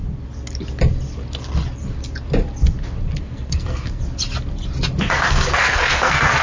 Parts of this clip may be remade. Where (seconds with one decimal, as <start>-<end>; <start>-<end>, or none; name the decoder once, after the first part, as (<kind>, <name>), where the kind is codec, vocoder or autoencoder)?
3.2-4.0 (codec, SNAC); 5.3-6.4